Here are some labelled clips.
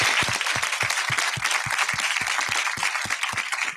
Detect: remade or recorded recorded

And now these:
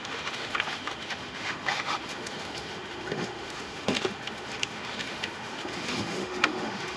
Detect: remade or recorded remade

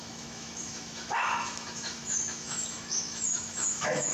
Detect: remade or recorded remade